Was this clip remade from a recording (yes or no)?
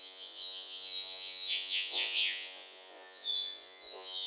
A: yes